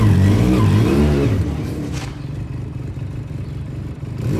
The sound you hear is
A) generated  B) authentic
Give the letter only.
A